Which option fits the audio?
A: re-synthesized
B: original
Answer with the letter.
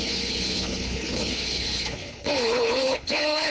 A